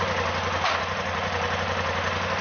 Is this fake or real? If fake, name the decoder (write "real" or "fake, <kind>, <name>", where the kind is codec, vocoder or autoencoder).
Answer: real